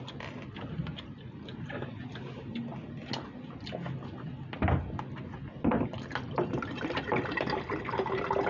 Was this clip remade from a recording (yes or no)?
no